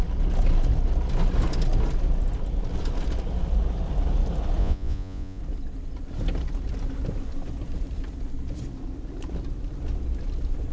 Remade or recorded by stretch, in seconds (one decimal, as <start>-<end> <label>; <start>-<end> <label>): 0.0-4.6 recorded; 4.6-5.4 remade; 5.4-10.7 recorded